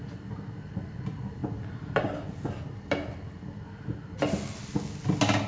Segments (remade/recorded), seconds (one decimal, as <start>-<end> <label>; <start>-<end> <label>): 0.0-5.5 recorded